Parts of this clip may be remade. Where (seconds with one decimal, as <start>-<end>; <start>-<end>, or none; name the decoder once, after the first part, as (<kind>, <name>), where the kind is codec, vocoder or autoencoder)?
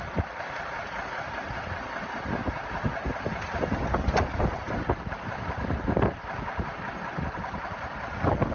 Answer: none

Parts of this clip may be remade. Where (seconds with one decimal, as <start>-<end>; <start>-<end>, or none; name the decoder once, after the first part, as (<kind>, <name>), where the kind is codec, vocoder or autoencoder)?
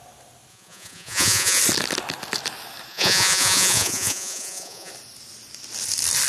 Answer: 0.5-1.6 (vocoder, Vocos); 2.9-4.9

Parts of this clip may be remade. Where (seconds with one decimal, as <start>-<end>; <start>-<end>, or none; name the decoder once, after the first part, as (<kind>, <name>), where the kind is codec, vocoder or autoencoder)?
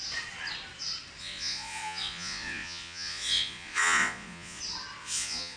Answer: 1.2-4.6 (vocoder, Vocos); 5.0-5.6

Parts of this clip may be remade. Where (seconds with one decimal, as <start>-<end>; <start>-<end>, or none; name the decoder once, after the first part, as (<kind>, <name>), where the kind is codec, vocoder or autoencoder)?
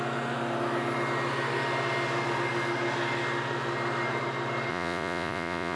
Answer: 4.7-5.8 (vocoder, Vocos)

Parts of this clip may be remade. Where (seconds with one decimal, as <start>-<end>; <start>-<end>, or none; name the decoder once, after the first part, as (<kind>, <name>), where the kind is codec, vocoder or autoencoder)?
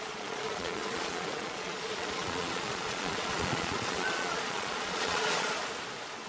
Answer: 0.0-5.6 (vocoder, Vocos)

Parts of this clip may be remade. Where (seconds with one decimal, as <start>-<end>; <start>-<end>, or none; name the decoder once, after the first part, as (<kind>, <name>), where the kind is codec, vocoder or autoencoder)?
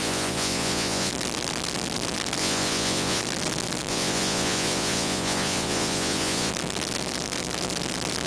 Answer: 0.0-1.1 (vocoder, Vocos); 2.4-3.2; 3.9-6.5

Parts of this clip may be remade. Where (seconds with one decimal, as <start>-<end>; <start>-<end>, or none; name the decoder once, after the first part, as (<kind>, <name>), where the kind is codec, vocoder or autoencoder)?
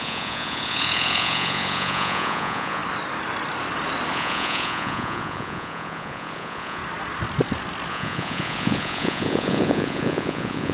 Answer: 0.0-2.8 (vocoder, Vocos); 4.1-6.8; 7.9-10.7